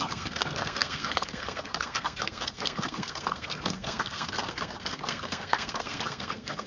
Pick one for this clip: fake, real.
fake